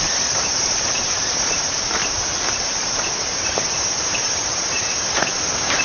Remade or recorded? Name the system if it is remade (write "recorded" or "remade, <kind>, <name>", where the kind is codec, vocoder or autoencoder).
remade, vocoder, BigVGAN v2